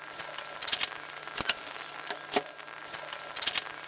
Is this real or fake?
real